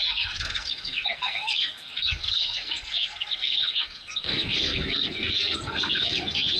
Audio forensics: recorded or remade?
remade